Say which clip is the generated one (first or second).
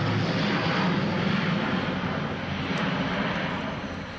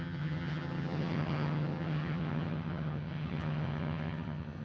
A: second